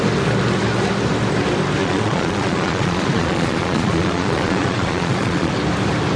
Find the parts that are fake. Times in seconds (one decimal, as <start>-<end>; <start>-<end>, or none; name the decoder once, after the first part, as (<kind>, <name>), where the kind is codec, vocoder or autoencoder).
1.8-5.5 (vocoder, Vocos)